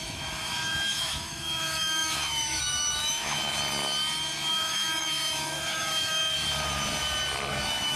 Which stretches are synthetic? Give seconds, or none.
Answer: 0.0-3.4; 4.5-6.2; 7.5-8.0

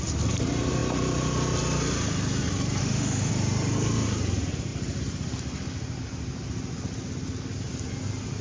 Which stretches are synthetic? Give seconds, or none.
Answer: 2.8-3.3

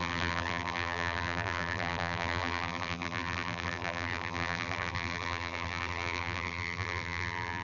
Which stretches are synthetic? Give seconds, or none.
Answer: 0.0-7.6